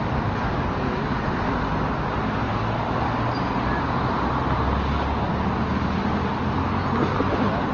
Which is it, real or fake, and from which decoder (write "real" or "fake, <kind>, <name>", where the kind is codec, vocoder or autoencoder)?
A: real